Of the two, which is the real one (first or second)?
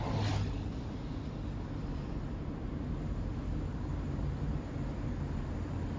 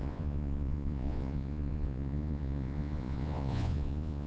first